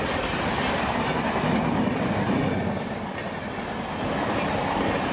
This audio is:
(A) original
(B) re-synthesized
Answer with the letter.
A